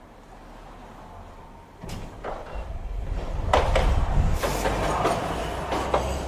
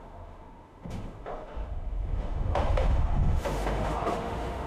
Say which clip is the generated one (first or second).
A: second